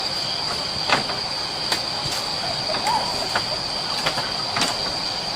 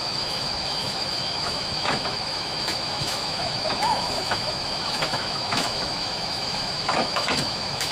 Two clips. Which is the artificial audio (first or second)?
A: second